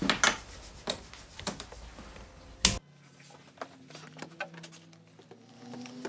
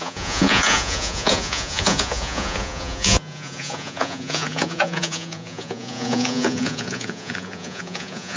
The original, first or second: first